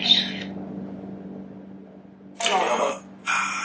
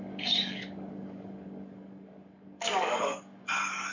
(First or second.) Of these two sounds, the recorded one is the first